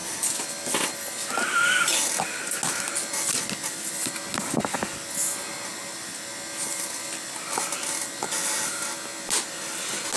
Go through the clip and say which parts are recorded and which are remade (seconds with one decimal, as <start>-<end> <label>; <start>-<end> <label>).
0.0-2.4 remade; 2.4-5.7 recorded; 5.7-8.3 remade; 8.3-10.2 recorded